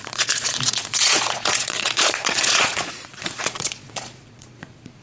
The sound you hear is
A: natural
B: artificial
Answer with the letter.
B